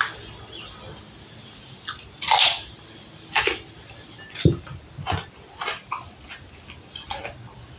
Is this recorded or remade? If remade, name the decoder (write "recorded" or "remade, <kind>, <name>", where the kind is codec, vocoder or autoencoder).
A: recorded